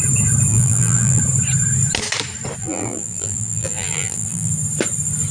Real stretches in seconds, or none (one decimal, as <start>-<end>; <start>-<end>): 0.0-0.5; 1.2-2.6; 4.5-5.3